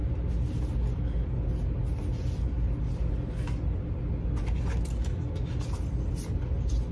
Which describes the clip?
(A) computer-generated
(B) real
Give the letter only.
B